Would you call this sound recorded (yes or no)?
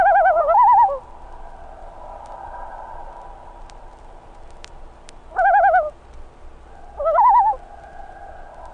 yes